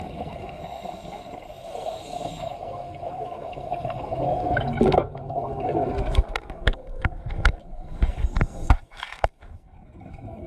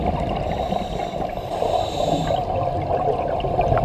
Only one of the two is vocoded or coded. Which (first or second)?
first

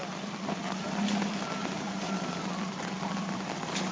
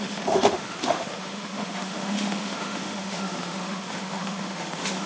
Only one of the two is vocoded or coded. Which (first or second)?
second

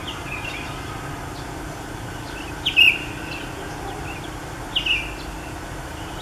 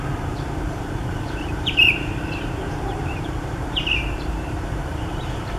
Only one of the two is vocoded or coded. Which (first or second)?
second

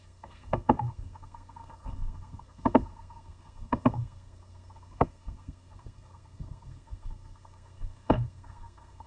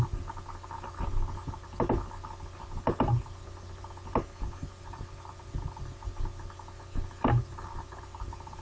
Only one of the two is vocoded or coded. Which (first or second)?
first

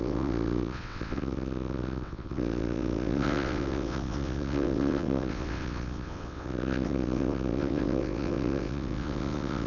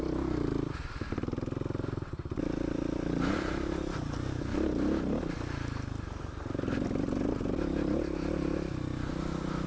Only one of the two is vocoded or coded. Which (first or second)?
first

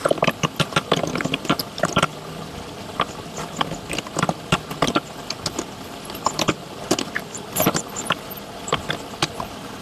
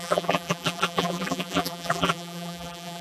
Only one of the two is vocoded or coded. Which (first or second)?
second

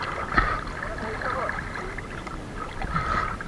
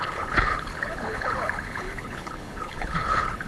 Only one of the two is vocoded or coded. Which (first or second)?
second